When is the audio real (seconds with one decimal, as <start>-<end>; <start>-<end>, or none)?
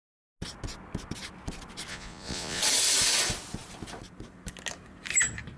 0.0-1.9; 2.6-5.6